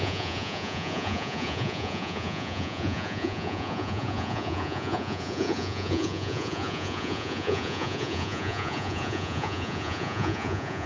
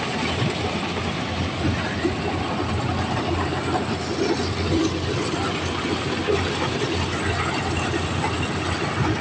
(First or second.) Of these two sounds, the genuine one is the second